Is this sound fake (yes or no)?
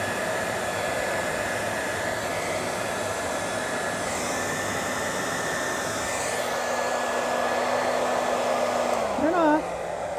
no